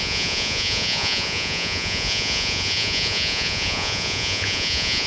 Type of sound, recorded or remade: remade